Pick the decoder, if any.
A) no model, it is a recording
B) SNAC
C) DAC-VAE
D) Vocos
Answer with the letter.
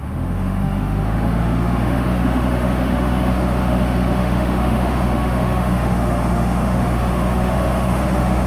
C